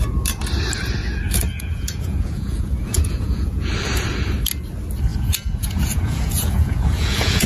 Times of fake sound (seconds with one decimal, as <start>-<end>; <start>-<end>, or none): 1.5-3.7; 5.1-7.5